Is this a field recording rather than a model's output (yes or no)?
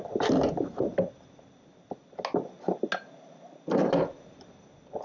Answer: yes